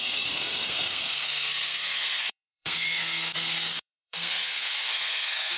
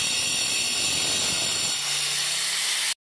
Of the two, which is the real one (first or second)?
second